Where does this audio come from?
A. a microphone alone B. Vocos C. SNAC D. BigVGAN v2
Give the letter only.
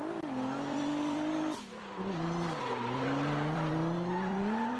D